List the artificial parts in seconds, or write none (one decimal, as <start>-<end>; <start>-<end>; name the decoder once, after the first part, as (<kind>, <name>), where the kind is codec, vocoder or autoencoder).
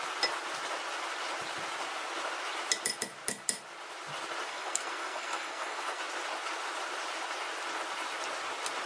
4.5-6.0 (codec, SNAC)